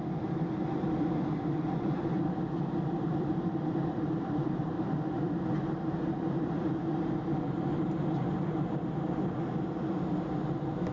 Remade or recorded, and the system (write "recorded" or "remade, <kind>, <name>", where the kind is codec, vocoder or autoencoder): remade, vocoder, BigVGAN v2